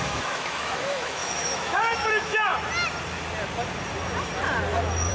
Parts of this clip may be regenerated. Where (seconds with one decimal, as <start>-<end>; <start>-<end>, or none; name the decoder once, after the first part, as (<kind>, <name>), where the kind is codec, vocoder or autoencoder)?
0.0-2.5 (autoencoder, DAC-VAE)